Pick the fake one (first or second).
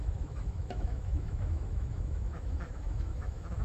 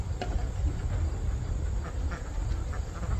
first